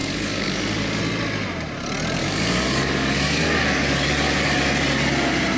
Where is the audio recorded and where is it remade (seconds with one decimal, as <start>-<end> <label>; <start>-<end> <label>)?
0.0-1.0 remade; 1.0-2.2 recorded; 2.2-4.6 remade; 4.6-5.6 recorded